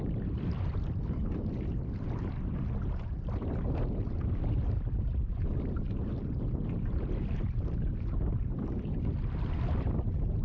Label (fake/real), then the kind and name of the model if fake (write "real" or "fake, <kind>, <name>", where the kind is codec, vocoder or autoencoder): real